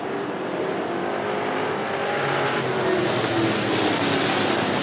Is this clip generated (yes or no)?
no